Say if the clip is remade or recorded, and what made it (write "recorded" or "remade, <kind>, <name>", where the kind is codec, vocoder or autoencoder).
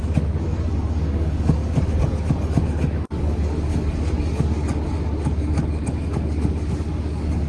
remade, codec, DAC